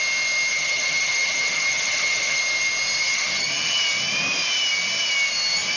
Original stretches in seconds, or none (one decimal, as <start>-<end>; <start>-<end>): 0.0-0.5; 2.4-3.0; 3.8-5.8